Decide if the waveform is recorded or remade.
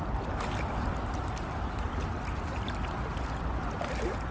recorded